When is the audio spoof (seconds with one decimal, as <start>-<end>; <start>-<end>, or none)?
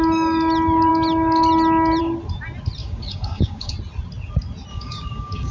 2.8-3.7; 4.7-5.5